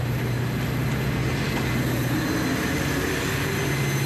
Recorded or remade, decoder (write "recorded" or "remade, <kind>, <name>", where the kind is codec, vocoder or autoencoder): recorded